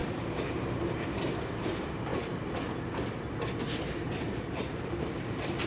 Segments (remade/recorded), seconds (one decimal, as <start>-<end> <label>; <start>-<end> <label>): 0.0-2.1 remade; 2.1-3.6 recorded; 3.6-5.7 remade